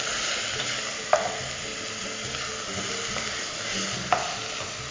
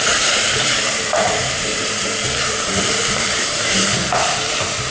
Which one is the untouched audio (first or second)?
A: first